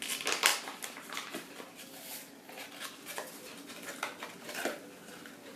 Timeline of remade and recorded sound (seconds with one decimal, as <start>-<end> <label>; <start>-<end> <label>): 0.0-5.6 recorded